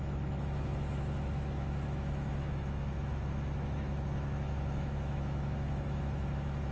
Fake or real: fake